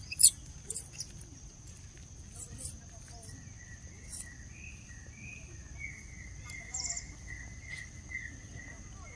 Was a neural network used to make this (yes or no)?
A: yes